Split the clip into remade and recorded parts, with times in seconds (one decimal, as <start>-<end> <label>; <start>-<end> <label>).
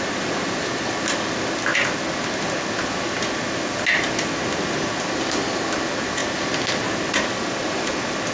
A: 0.0-8.3 recorded